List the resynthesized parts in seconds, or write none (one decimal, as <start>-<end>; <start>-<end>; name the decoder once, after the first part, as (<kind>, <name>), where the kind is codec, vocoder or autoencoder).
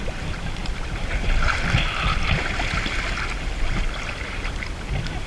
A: none